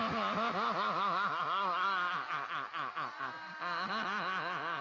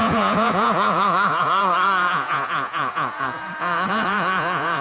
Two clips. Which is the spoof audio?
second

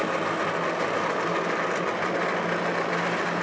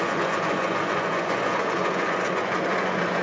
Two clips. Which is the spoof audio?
second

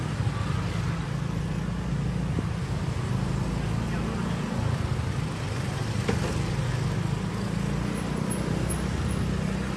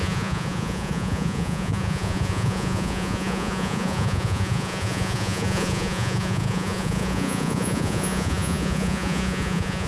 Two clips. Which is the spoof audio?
second